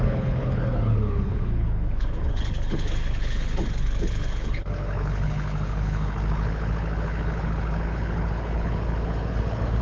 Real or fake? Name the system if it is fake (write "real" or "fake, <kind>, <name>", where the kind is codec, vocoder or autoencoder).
fake, codec, HILCodec